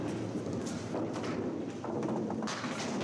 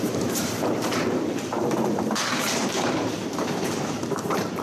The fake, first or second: second